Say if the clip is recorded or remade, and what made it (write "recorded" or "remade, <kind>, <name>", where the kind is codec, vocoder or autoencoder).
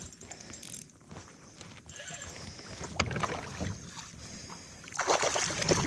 recorded